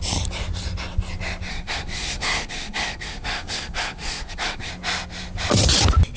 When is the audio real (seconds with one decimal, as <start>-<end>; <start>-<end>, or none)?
0.0-1.5; 4.7-6.2

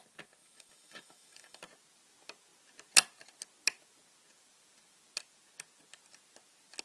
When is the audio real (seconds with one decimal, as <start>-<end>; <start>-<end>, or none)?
0.0-0.4; 1.6-6.8

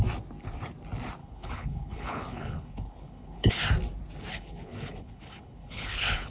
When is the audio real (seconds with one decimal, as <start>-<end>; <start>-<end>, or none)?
0.0-1.2; 3.5-4.3

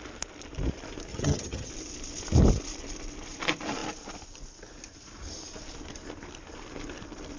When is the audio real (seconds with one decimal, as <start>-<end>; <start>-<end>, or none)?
0.0-1.1; 1.7-7.4

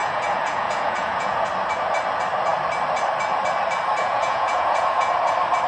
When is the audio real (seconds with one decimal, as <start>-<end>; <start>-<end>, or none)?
1.5-4.0; 5.1-5.7